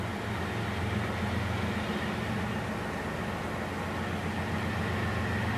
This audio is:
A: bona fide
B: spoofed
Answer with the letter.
A